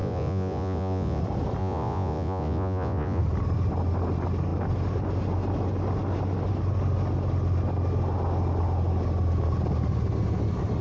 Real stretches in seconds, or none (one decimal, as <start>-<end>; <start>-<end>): 1.2-1.6; 3.2-10.8